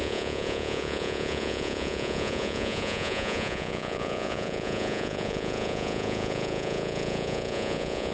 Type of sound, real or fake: fake